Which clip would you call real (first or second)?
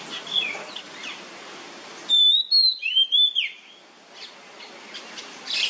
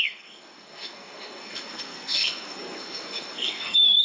first